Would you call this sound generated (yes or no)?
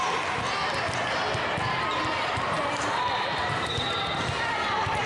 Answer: no